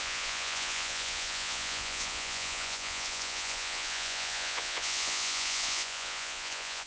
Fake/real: fake